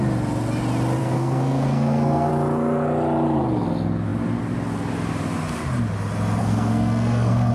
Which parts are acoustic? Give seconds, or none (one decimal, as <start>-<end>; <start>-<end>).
0.0-1.0; 2.3-6.4